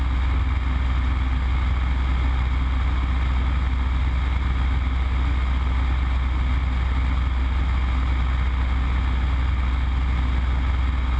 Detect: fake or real real